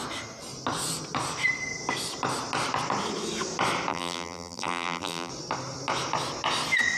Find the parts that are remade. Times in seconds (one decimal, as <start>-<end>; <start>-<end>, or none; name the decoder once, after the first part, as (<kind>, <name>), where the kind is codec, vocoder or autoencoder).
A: 3.9-5.3 (vocoder, BigVGAN v2)